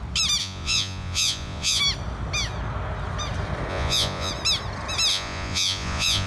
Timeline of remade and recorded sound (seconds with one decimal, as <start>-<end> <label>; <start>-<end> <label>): 0.0-0.4 recorded; 0.4-1.8 remade; 1.8-3.7 recorded; 3.7-4.3 remade; 4.3-5.1 recorded; 5.1-6.3 remade